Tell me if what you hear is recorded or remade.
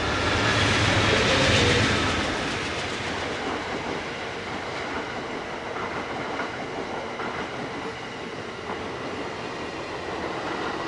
recorded